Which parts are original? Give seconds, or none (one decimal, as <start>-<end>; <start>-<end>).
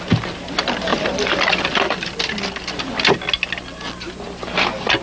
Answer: 0.0-0.9; 3.2-5.0